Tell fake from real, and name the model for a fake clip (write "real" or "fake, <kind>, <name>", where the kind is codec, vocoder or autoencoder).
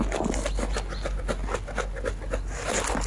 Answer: real